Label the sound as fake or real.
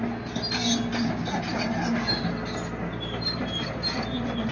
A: real